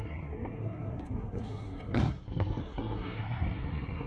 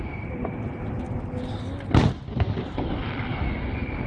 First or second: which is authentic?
second